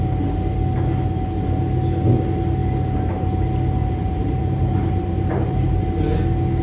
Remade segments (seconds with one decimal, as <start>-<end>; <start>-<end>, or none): 3.8-5.8